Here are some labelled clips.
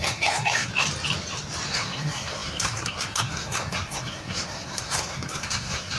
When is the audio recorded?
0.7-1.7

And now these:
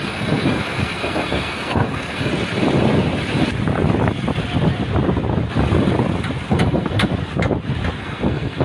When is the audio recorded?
2.3-6.5; 7.1-8.0

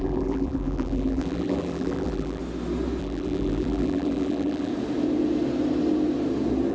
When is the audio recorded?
2.4-3.0; 4.7-6.7

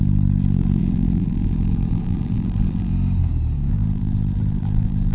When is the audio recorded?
2.9-3.7

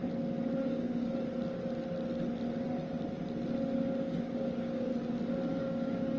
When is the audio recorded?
0.0-0.6; 1.1-4.0; 4.9-5.6

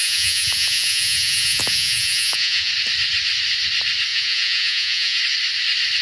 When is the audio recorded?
2.7-4.1; 5.2-6.0

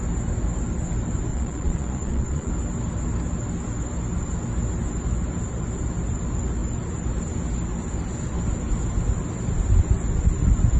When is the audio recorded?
0.0-1.3; 2.5-10.8

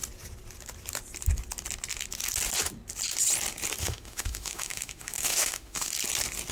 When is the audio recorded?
0.0-3.8; 5.9-6.5